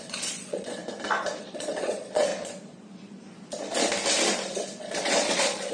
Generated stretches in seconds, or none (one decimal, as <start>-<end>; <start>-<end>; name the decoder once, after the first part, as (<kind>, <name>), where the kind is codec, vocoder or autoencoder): 0.0-0.8 (vocoder, Vocos); 1.4-2.3; 4.8-5.7